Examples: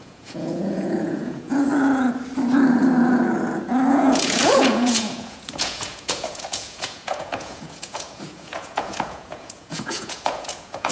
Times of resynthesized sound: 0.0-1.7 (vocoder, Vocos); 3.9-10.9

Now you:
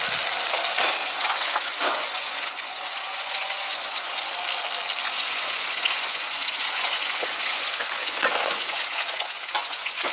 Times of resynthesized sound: 1.0-4.3 (vocoder, Vocos); 5.0-10.1

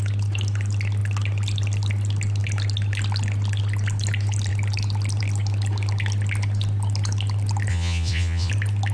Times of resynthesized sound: 7.7-8.5 (vocoder, Vocos)

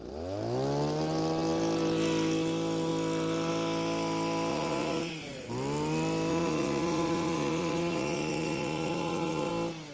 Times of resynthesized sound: 4.5-5.5 (vocoder, Vocos); 6.3-9.5

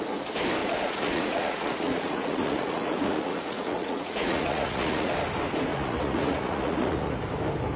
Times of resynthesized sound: 0.6-5.1 (vocoder, Vocos); 5.7-7.2